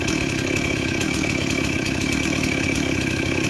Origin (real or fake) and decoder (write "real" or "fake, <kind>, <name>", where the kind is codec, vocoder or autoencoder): fake, autoencoder, DAC-VAE